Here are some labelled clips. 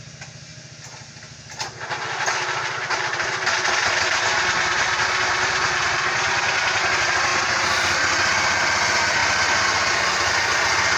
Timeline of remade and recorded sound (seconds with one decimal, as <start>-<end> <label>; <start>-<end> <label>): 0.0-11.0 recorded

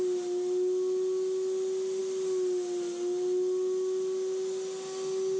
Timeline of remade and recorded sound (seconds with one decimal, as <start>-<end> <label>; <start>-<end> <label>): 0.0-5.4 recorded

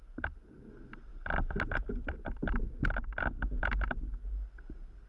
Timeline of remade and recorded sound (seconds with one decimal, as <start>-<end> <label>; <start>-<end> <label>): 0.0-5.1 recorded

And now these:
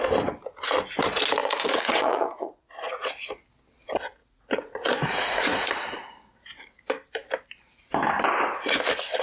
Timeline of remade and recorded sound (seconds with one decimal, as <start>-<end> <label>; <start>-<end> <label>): 0.0-1.4 recorded; 1.4-3.1 remade; 3.1-4.2 recorded; 4.2-5.7 remade; 5.7-9.2 recorded

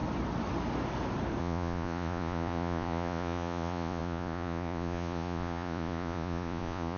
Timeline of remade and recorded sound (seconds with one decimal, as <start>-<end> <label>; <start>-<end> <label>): 0.0-1.4 recorded; 1.4-7.0 remade